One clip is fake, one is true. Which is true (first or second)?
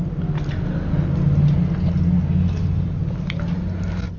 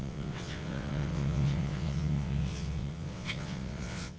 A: first